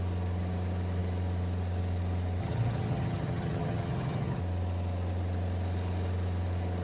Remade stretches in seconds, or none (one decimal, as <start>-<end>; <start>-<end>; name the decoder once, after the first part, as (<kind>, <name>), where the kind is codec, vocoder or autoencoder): 2.4-4.4 (vocoder, HiFi-GAN)